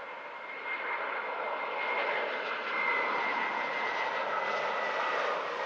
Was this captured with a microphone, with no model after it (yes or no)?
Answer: yes